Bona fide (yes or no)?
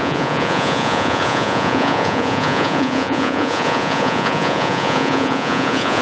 no